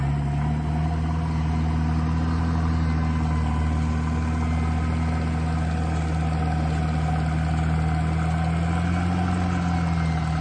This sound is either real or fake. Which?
real